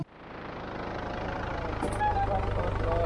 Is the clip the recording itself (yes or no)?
no